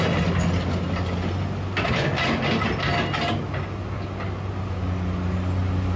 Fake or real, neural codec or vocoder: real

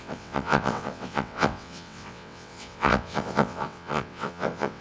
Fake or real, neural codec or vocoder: fake, vocoder, WaveNeXt